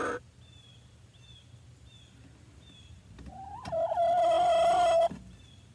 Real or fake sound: real